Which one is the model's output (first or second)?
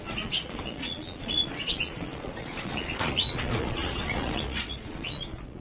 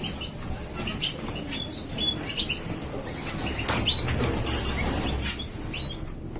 first